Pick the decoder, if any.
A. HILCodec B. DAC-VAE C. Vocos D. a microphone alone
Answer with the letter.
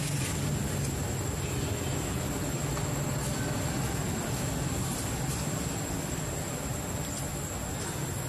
D